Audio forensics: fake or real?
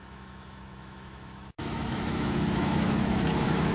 fake